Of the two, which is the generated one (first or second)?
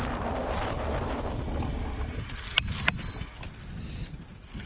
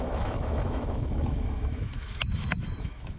second